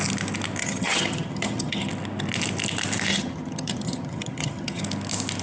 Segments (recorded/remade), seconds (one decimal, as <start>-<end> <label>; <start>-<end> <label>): 0.0-0.6 recorded; 0.6-1.9 remade; 1.9-3.1 recorded; 3.1-4.8 remade; 4.8-5.4 recorded